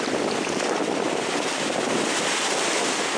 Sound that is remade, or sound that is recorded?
recorded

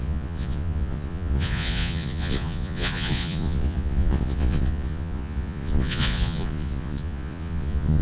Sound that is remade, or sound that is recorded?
remade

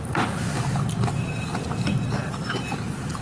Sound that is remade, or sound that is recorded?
recorded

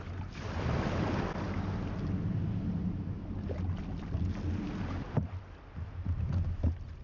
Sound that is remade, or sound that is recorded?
recorded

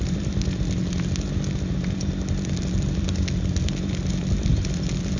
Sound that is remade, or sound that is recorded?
recorded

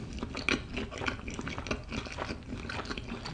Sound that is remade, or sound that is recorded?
recorded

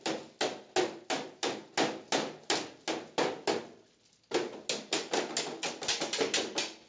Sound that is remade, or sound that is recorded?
recorded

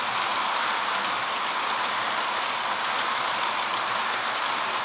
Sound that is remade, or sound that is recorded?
recorded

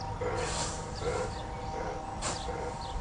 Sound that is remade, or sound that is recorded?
recorded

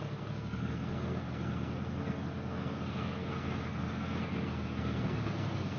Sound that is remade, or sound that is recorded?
remade